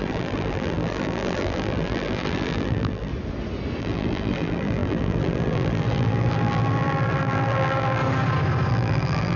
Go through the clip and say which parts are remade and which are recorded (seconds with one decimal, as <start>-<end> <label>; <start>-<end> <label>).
0.0-3.1 remade; 3.1-3.8 recorded; 3.8-8.0 remade; 8.0-8.7 recorded; 8.7-9.4 remade